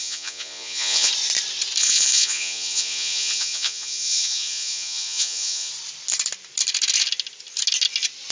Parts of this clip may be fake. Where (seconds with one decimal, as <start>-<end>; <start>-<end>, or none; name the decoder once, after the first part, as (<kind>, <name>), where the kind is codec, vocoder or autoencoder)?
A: 0.0-1.1 (vocoder, Vocos); 1.8-5.7